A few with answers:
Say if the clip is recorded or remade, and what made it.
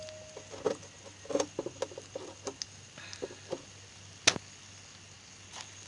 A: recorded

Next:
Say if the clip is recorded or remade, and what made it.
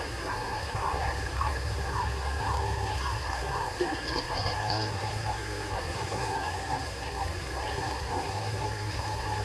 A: remade, codec, SNAC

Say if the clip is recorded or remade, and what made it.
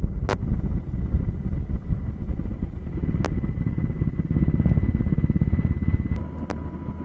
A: recorded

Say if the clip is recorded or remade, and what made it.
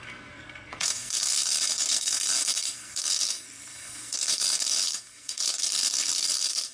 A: remade, codec, SNAC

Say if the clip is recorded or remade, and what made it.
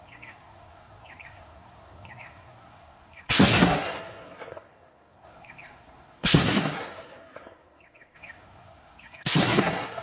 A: remade, codec, SNAC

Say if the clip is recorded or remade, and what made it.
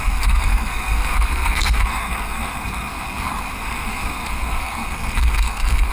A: remade, codec, SNAC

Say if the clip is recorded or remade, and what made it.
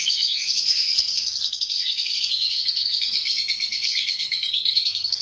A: remade, codec, SNAC